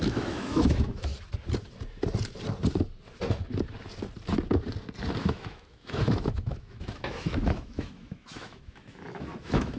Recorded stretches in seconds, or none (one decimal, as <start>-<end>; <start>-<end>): 1.1-5.2

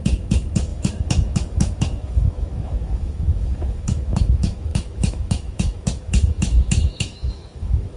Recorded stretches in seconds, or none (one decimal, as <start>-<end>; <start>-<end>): none

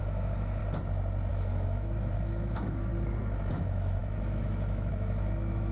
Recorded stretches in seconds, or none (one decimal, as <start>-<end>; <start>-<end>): 0.6-1.3; 2.9-3.5

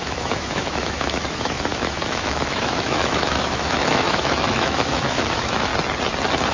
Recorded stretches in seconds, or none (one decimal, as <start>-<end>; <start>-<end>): 5.7-6.5

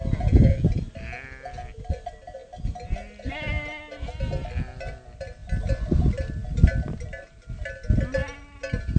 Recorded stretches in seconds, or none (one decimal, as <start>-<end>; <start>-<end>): 0.0-9.0